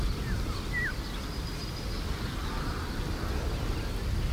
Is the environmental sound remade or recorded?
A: recorded